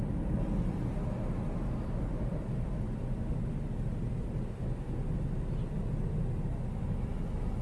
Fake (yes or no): no